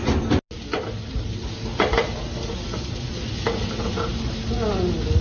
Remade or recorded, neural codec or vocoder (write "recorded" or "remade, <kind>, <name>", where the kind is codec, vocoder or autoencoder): recorded